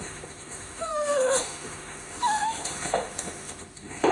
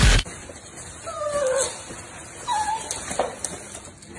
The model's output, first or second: first